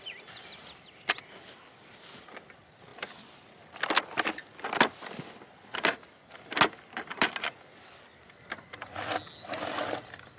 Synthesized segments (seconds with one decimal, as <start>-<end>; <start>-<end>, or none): none